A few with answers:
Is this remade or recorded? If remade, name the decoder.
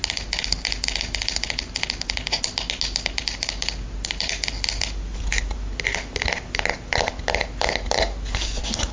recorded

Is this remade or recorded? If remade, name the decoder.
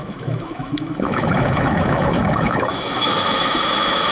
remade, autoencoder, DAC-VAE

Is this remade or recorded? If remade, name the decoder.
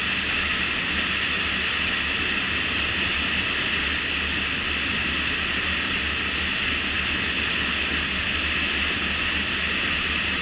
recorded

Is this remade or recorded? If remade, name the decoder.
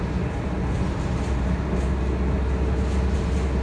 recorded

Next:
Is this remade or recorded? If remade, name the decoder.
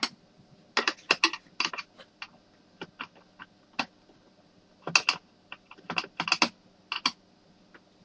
recorded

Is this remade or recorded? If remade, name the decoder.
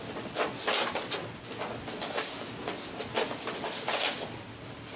recorded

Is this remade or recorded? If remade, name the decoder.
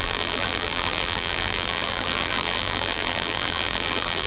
remade, vocoder, BigVGAN v2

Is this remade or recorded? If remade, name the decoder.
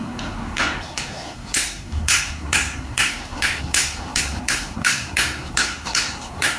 remade, codec, SNAC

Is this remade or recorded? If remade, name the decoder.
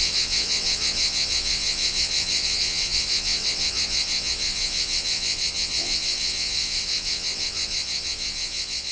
remade, vocoder, WaveNeXt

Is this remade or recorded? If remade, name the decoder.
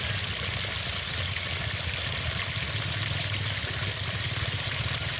recorded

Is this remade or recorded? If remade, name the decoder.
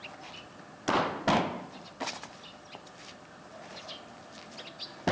recorded